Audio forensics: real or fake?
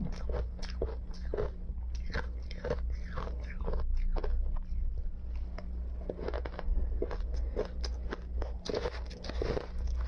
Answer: real